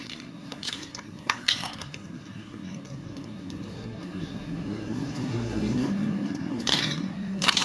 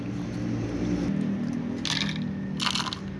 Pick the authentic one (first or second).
second